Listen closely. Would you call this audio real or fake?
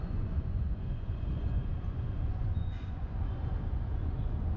fake